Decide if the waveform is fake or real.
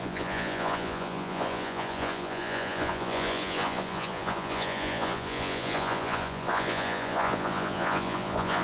fake